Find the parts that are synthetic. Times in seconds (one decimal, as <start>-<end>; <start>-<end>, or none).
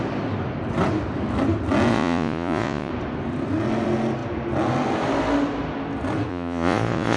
1.9-2.9; 6.3-7.2